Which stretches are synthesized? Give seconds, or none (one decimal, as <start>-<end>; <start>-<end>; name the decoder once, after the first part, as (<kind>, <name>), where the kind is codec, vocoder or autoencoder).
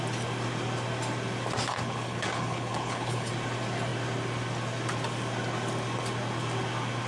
1.7-3.3 (codec, HILCodec)